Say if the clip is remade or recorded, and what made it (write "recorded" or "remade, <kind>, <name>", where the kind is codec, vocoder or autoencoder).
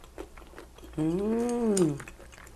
recorded